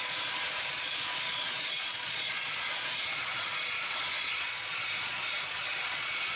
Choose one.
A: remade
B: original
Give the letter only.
A